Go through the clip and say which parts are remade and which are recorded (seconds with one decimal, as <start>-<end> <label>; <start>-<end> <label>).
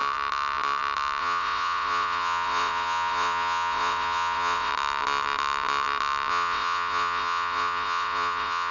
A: 0.0-1.2 recorded; 1.2-4.7 remade; 4.7-6.3 recorded; 6.3-8.7 remade